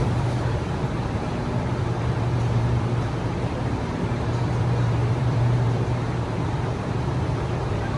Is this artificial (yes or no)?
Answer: yes